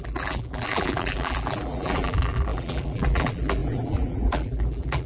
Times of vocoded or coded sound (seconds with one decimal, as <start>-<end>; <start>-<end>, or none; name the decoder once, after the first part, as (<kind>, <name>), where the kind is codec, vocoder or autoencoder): 0.0-5.1 (vocoder, BigVGAN v2)